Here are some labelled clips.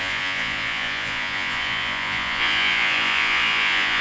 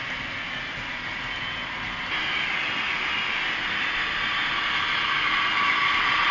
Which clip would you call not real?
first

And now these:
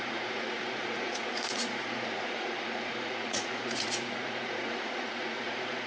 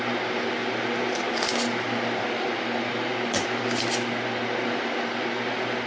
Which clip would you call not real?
first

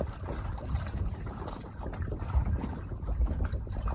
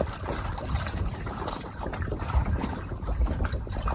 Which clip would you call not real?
second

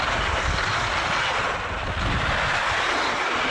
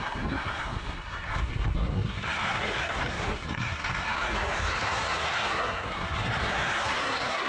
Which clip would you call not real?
second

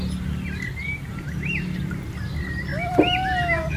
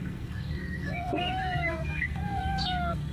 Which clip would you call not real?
second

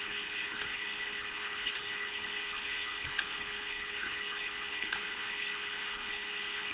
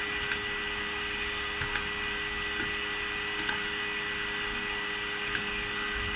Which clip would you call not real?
first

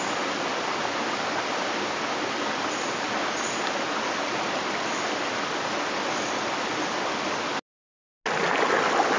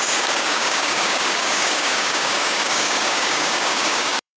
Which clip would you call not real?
second